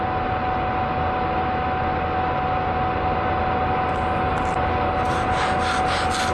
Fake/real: real